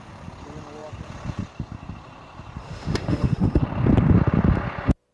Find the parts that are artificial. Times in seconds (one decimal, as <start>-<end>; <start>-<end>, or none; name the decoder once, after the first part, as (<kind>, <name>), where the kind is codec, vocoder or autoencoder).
2.6-3.6 (autoencoder, DAC-VAE)